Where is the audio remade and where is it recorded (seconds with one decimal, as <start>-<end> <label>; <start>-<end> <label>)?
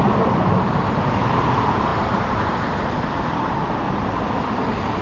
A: 0.0-1.9 recorded; 1.9-2.8 remade; 2.8-5.0 recorded